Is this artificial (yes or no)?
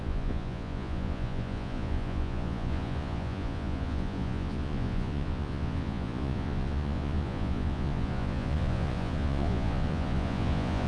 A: yes